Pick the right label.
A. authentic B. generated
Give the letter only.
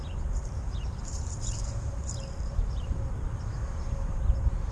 B